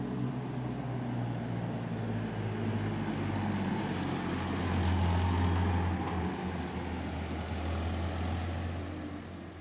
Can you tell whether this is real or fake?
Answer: real